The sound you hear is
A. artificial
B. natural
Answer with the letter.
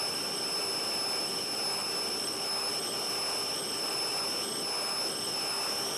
B